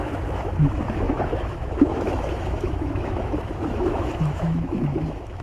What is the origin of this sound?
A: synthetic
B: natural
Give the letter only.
A